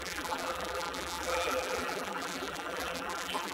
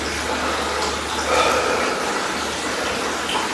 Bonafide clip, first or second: second